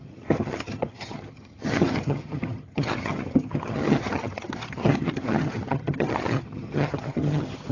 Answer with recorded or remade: remade